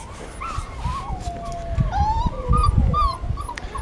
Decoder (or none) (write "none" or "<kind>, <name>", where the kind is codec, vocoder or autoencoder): none